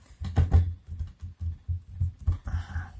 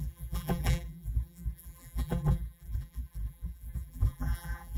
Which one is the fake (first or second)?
second